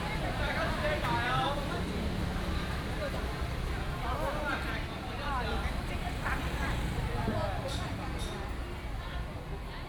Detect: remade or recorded remade